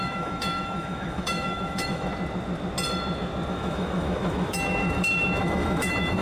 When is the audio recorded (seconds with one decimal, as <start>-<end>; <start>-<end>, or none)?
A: 2.1-3.5

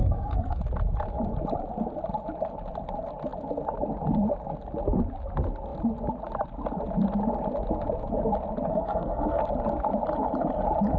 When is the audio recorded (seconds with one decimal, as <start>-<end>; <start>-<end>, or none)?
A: 0.6-8.7; 9.4-11.0

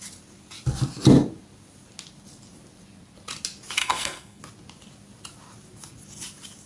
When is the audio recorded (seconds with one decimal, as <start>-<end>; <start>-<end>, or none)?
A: 0.0-3.8; 4.4-6.7

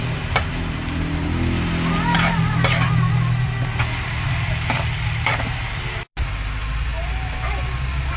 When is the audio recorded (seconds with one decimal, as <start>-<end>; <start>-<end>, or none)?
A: 0.0-8.2